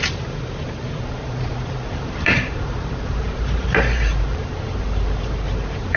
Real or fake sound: fake